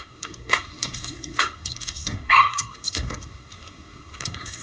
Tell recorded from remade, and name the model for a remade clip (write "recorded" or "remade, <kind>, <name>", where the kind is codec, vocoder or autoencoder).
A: remade, codec, SNAC